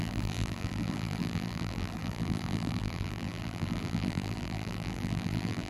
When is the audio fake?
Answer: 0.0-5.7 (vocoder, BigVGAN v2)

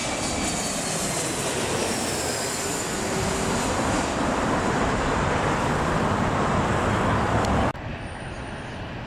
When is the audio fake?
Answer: 0.0-9.1 (vocoder, BigVGAN v2)